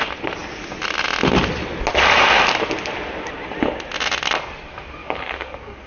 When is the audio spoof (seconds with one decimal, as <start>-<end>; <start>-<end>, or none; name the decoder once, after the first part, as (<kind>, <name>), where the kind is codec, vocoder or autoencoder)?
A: 5.0-5.9 (codec, DAC)